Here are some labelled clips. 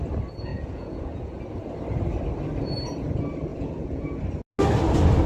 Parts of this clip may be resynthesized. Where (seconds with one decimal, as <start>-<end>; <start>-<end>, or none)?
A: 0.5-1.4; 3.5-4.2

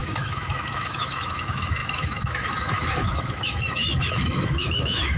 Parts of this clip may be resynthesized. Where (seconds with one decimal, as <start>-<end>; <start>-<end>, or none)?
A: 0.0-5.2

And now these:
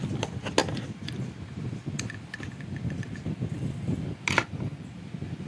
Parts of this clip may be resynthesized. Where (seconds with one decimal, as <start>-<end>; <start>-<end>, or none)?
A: none